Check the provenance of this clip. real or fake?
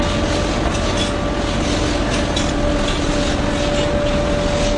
real